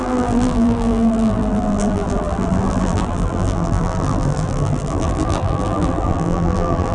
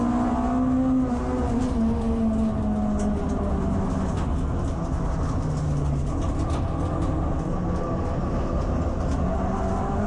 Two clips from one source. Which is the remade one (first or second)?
first